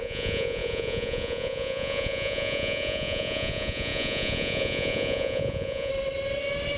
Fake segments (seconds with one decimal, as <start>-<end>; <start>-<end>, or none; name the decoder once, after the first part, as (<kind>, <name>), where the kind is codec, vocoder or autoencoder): 0.0-5.9 (vocoder, Vocos)